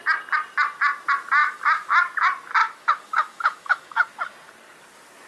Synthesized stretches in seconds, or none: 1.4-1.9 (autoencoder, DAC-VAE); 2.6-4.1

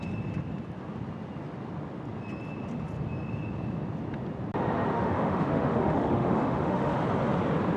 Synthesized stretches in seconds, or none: 4.9-7.0 (autoencoder, DAC-VAE)

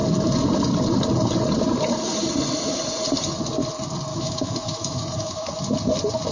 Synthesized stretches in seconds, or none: 4.1-5.5 (autoencoder, DAC-VAE)

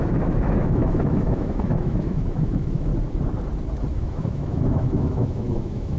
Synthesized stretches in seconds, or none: 0.0-2.9 (autoencoder, DAC-VAE); 3.9-6.0

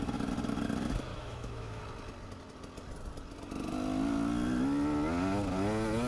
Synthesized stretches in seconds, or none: 1.1-1.8 (autoencoder, DAC-VAE)